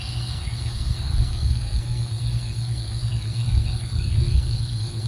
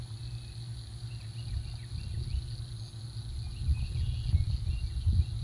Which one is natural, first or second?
second